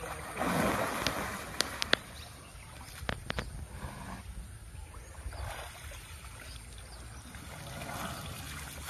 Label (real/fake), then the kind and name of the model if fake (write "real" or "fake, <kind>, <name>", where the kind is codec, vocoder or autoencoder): real